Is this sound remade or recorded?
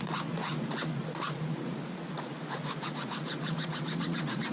remade